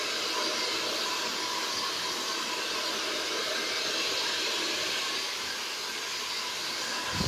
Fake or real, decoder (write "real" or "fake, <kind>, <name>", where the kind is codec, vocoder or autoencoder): real